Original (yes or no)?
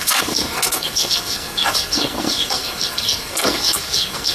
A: no